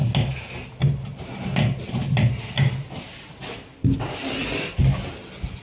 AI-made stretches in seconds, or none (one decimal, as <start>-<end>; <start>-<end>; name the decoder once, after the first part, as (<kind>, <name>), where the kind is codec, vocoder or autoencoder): none